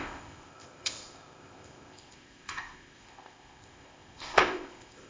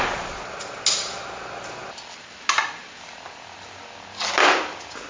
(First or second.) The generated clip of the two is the first